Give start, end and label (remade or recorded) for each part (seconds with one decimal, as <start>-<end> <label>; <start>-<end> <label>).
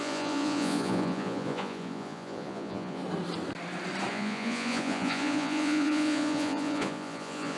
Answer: 0.0-3.0 remade; 3.0-4.1 recorded; 4.1-7.6 remade